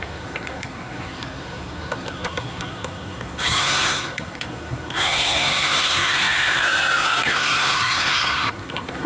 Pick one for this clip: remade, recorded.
remade